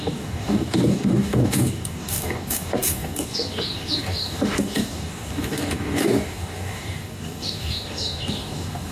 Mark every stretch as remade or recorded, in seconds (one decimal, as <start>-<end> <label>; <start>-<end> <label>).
0.0-8.9 remade